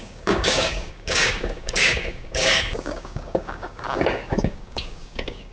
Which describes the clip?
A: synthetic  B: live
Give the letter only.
A